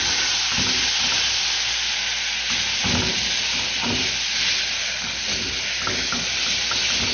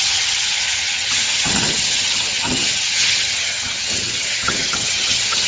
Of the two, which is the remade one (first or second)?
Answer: second